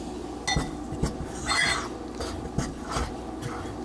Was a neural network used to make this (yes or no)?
no